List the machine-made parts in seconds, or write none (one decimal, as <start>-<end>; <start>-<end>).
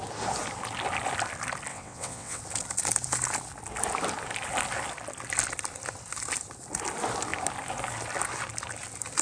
1.7-2.4